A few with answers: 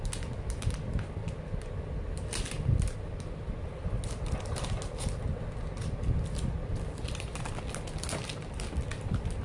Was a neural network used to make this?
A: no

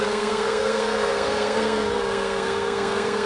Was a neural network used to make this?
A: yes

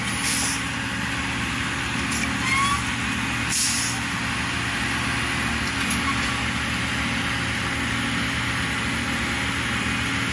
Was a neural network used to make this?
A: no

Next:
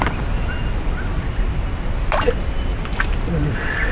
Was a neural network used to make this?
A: no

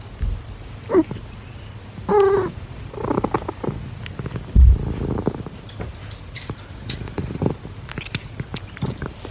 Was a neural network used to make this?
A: no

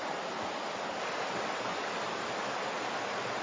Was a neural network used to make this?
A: no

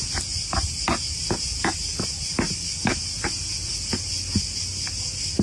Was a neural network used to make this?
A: no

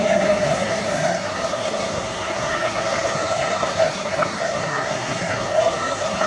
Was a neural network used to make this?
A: yes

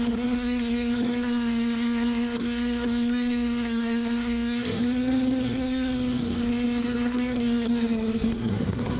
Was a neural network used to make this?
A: yes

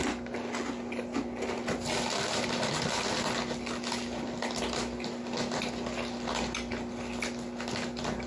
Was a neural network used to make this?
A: no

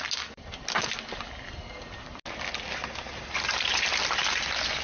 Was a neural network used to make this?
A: no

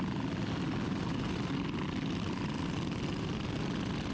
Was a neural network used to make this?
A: no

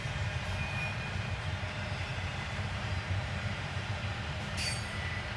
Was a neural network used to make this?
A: yes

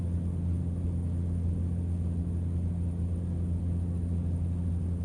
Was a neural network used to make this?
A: no